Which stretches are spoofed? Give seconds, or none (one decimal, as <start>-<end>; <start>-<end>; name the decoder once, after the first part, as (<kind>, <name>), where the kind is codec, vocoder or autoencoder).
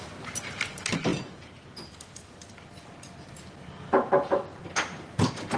1.1-1.9 (vocoder, Vocos)